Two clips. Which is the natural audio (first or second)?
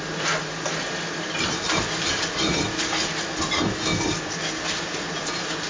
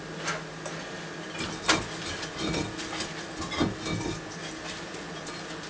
second